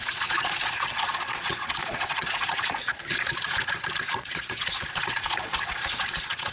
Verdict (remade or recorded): remade